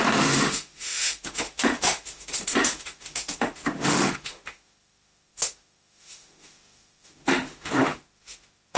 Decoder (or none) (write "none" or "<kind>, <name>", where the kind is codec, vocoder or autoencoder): autoencoder, DAC-VAE